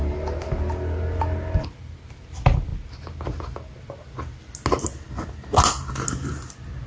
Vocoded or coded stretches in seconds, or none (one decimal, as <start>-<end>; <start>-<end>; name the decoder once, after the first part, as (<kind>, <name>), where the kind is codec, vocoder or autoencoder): none